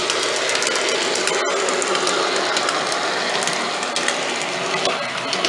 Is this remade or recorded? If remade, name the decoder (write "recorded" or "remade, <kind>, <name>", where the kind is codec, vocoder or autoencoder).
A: recorded